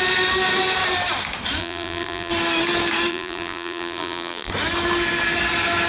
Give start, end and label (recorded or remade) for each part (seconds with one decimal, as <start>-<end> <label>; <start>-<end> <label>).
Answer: 0.0-1.6 recorded; 1.6-2.3 remade; 2.3-3.1 recorded; 3.1-4.5 remade; 4.5-5.9 recorded